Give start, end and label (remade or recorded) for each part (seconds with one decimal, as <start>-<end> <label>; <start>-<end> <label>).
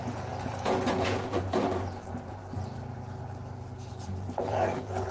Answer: 0.0-2.4 remade; 2.4-3.9 recorded; 3.9-5.1 remade